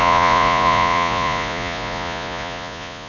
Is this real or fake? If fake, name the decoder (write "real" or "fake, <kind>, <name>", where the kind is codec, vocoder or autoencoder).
fake, vocoder, Vocos